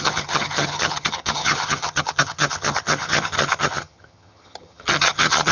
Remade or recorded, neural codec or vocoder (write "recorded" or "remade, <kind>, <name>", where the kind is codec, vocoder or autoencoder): remade, vocoder, HiFi-GAN